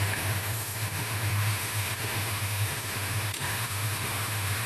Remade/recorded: remade